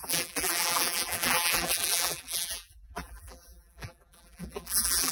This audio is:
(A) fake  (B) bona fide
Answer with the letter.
A